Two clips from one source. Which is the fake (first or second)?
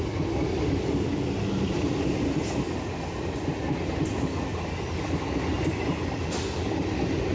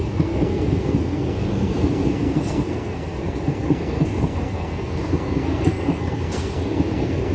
second